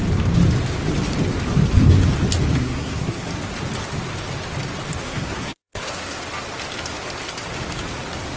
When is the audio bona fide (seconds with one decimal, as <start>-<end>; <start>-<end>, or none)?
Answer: 0.0-2.6; 3.3-5.0; 6.2-8.4